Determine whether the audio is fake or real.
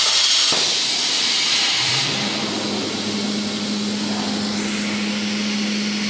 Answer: real